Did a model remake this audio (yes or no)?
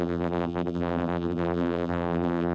yes